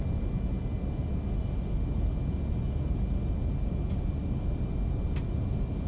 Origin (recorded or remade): recorded